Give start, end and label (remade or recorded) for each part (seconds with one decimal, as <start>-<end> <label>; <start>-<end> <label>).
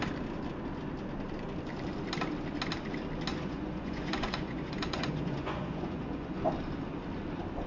0.0-3.3 recorded; 3.3-6.4 remade; 6.4-7.7 recorded